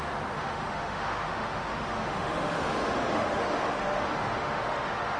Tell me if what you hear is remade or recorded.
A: remade